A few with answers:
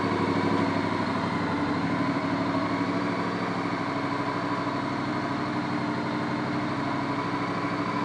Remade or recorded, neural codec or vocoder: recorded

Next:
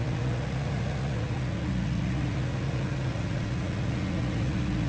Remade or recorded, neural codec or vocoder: remade, vocoder, Vocos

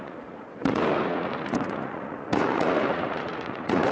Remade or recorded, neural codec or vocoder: remade, vocoder, Vocos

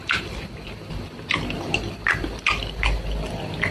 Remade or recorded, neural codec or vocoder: recorded